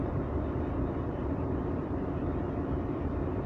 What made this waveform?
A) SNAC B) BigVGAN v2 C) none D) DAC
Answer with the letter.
B